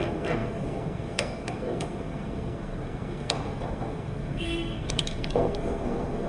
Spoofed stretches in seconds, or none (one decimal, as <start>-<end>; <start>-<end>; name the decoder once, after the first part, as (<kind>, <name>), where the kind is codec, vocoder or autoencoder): 0.0-6.3 (codec, SNAC)